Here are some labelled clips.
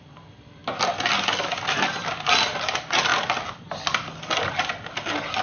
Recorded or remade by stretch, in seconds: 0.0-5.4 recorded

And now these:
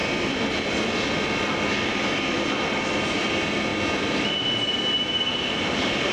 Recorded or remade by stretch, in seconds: 0.0-6.1 recorded